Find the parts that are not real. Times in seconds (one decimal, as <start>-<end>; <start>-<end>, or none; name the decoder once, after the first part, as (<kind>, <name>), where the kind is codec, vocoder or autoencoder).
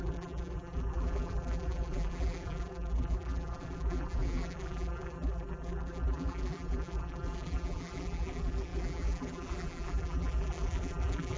0.0-11.4 (vocoder, BigVGAN v2)